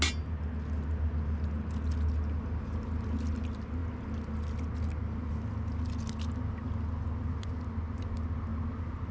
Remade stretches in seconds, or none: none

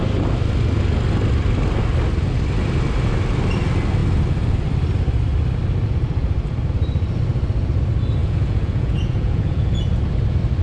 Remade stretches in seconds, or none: 8.2-9.9 (vocoder, Vocos)